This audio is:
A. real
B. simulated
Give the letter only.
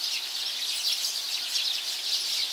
A